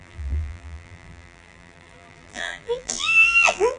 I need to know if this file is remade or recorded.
remade